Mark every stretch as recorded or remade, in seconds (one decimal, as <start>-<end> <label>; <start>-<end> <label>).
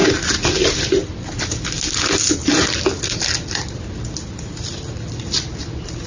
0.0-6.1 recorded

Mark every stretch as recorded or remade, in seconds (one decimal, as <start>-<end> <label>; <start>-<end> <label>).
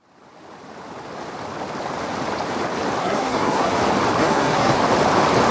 0.0-3.0 recorded; 3.0-3.7 remade; 3.7-4.2 recorded; 4.2-4.8 remade; 4.8-5.5 recorded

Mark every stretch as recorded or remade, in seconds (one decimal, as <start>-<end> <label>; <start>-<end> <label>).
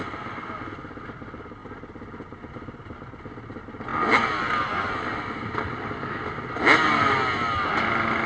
0.0-8.3 recorded